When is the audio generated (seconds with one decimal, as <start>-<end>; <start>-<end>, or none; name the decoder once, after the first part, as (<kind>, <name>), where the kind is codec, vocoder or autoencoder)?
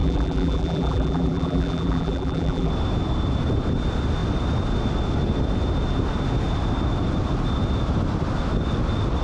0.0-2.7 (vocoder, BigVGAN v2)